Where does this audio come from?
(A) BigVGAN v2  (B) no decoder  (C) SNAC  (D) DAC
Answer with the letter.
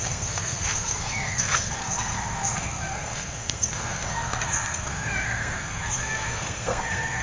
C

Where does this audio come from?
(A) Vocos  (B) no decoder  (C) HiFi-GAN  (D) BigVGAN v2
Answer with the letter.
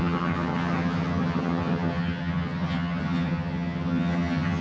C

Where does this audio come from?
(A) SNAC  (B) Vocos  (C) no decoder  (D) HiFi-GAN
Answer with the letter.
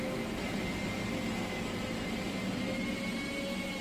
C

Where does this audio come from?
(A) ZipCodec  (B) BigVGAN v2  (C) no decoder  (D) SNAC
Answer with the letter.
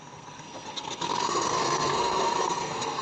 D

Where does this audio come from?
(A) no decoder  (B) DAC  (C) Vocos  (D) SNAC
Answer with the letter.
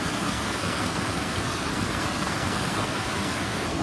D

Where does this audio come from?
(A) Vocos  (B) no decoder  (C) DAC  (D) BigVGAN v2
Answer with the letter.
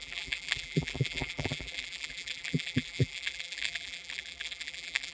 D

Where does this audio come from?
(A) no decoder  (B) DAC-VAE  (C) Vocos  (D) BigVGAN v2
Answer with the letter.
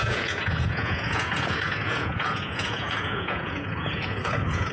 C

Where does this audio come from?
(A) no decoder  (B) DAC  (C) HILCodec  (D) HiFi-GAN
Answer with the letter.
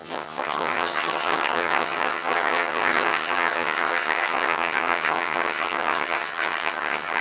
D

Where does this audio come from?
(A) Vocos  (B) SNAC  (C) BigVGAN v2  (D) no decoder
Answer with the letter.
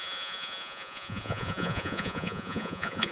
A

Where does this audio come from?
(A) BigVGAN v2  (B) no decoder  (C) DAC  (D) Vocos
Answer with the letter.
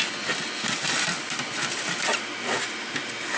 B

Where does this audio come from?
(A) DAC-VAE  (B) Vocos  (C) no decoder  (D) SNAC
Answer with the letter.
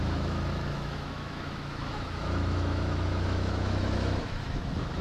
A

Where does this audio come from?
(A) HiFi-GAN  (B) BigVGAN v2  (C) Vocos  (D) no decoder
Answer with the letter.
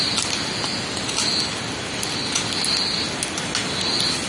D